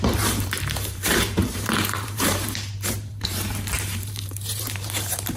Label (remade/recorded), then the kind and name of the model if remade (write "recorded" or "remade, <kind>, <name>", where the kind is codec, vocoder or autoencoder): remade, vocoder, BigVGAN v2